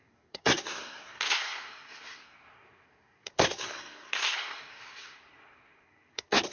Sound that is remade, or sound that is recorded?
remade